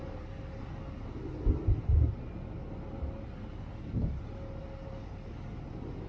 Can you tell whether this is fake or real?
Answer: real